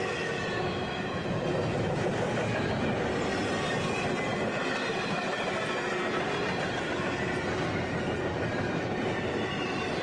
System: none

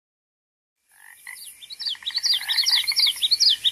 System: none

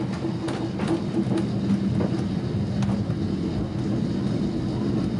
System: none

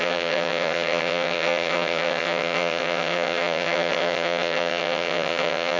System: vocoder, HiFi-GAN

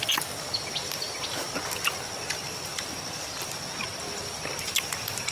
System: none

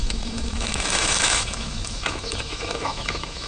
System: autoencoder, DAC-VAE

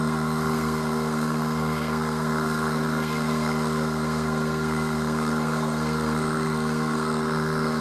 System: codec, SNAC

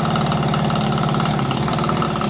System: none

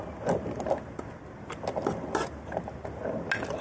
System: none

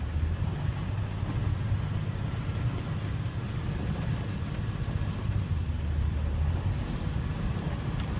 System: none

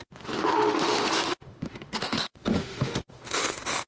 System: autoencoder, DAC-VAE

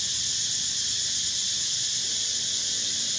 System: none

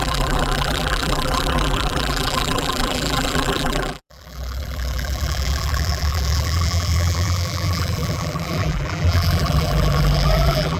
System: vocoder, BigVGAN v2